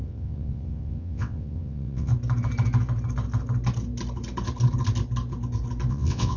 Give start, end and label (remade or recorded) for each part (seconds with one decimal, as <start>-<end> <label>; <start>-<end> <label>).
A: 0.0-2.1 remade; 2.1-5.9 recorded; 5.9-6.4 remade